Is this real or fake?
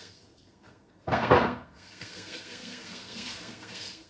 fake